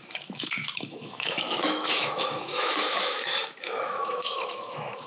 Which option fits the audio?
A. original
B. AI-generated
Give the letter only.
B